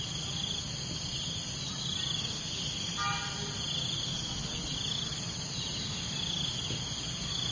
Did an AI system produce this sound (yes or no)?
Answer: no